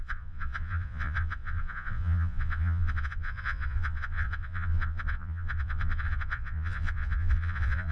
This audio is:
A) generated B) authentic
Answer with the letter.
A